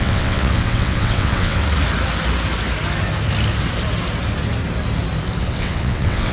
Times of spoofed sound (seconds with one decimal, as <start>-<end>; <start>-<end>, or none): 0.0-1.6; 5.4-6.3